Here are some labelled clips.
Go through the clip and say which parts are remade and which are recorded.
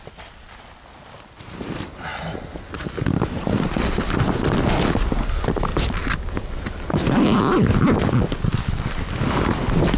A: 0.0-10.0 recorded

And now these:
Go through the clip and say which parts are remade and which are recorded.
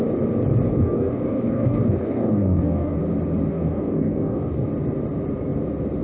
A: 0.0-0.7 recorded; 0.7-3.0 remade; 3.0-3.5 recorded; 3.5-4.7 remade; 4.7-6.0 recorded